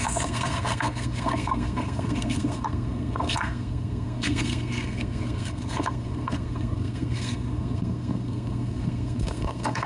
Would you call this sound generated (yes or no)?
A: yes